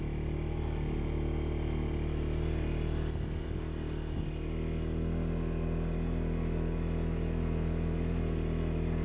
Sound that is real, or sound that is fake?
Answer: real